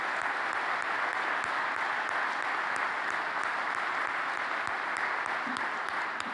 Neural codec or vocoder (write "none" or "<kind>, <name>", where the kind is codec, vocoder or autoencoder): none